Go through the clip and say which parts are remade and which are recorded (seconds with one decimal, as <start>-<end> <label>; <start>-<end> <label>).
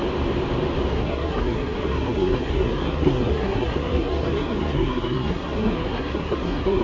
0.0-0.9 recorded; 0.9-6.8 remade